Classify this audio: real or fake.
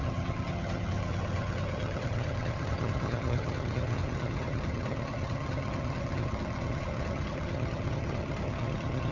fake